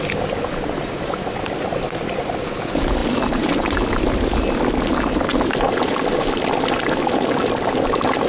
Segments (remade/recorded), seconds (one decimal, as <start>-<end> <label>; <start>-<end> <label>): 0.0-8.3 recorded